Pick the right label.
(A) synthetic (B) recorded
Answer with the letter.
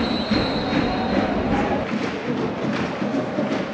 B